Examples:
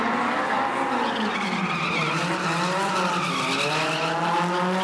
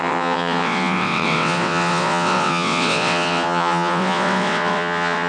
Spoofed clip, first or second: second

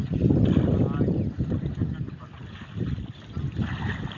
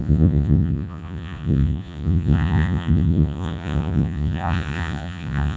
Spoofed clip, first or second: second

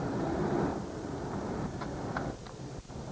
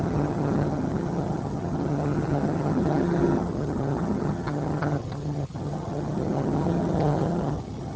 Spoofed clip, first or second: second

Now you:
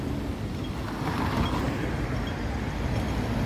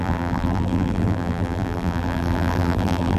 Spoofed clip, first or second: second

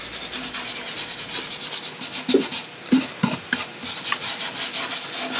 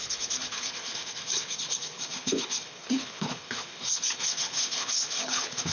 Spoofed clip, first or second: second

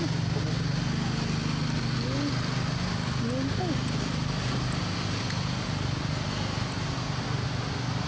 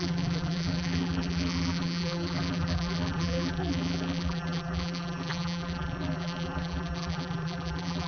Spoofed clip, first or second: second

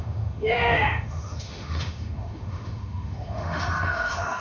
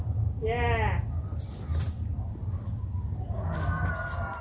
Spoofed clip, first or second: first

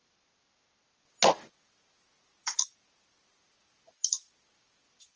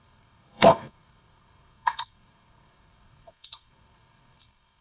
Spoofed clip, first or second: second